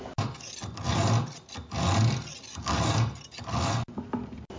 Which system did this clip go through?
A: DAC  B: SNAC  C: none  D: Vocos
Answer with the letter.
C